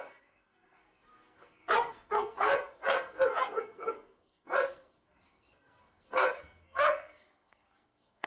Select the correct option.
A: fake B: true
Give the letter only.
A